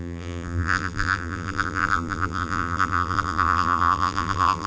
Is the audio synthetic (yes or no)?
yes